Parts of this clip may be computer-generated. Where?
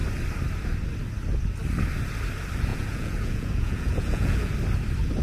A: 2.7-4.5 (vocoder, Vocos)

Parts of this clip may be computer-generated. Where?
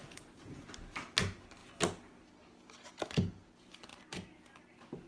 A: none